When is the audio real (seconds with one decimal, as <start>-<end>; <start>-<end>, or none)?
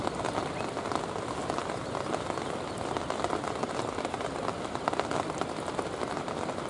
0.0-6.7